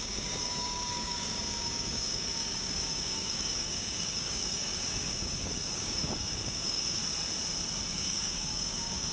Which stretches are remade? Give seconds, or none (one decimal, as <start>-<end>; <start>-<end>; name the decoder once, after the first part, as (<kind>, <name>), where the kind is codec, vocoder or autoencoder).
0.0-7.0 (codec, DAC); 7.9-9.1